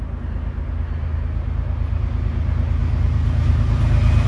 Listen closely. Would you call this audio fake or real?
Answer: real